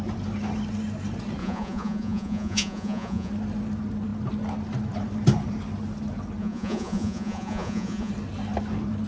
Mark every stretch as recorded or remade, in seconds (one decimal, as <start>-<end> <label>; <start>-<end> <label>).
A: 0.0-1.4 recorded; 1.4-3.3 remade; 3.3-6.4 recorded; 6.4-8.1 remade; 8.1-9.1 recorded